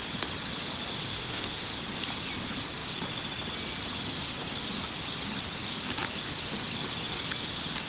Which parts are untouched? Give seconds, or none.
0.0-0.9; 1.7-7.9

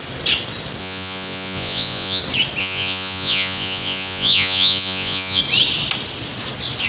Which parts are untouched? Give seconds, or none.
0.0-0.8; 2.2-2.6; 5.4-6.9

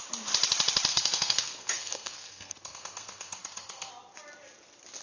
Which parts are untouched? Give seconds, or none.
0.0-0.9; 3.9-5.0

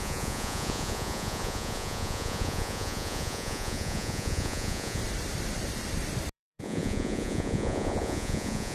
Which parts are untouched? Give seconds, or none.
5.0-6.3

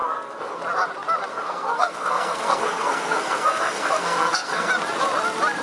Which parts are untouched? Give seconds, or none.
0.6-1.3; 4.7-5.6